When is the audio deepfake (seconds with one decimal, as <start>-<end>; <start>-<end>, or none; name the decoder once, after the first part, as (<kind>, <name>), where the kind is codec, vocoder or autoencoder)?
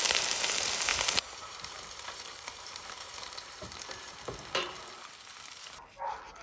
0.9-4.2 (vocoder, BigVGAN v2)